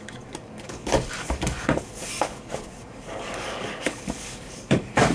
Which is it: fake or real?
fake